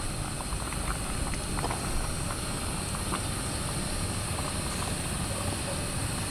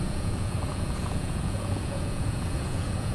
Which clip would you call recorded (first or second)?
first